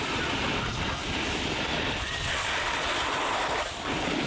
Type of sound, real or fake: real